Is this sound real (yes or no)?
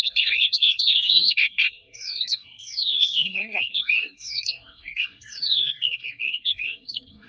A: no